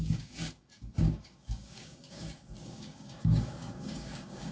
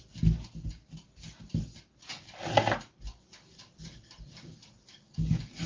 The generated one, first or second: first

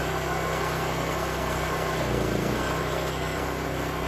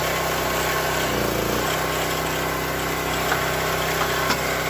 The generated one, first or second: first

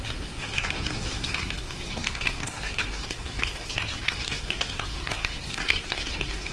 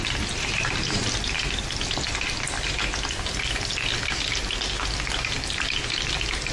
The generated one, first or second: first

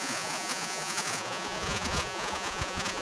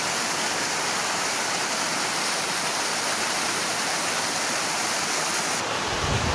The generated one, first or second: first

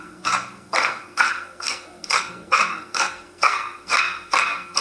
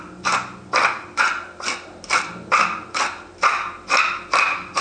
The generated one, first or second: first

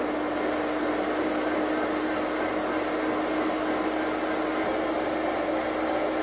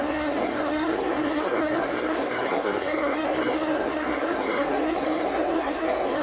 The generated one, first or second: second